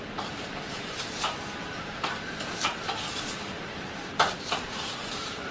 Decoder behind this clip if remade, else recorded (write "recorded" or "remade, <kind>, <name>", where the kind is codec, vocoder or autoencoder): remade, vocoder, BigVGAN v2